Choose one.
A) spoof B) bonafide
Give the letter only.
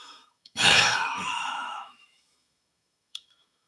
A